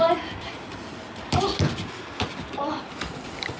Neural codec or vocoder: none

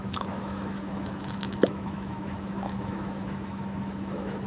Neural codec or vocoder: autoencoder, DAC-VAE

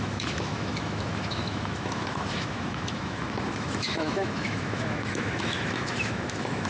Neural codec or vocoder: autoencoder, DAC-VAE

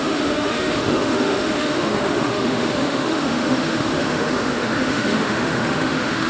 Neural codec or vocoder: autoencoder, DAC-VAE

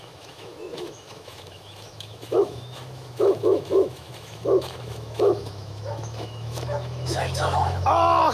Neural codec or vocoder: autoencoder, DAC-VAE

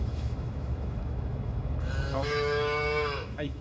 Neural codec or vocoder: autoencoder, DAC-VAE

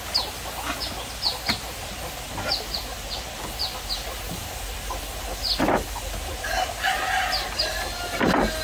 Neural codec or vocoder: none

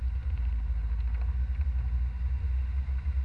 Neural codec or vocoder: none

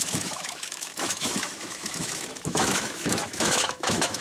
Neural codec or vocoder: autoencoder, DAC-VAE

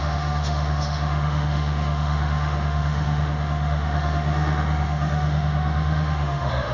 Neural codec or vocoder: autoencoder, DAC-VAE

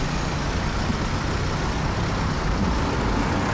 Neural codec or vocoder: none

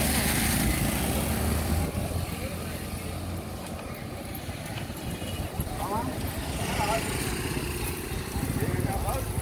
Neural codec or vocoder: none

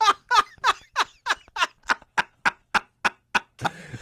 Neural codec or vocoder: none